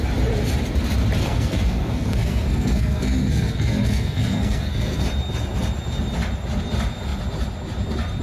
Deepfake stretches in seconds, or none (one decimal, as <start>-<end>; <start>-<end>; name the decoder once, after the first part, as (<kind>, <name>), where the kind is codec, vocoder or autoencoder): 1.2-5.0 (codec, SNAC)